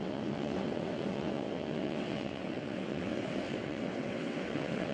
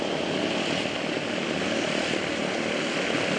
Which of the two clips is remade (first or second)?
first